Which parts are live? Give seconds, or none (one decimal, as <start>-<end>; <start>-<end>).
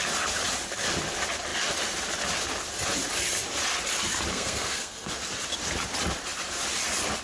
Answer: 0.0-4.3; 5.1-7.2